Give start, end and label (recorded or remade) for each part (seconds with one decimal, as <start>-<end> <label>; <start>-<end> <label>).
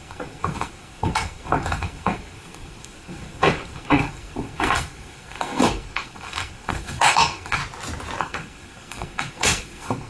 0.0-7.6 remade; 7.6-8.2 recorded; 8.2-10.1 remade